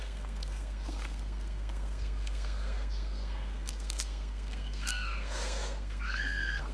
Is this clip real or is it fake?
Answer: fake